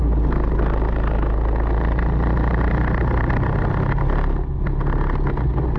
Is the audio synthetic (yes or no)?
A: no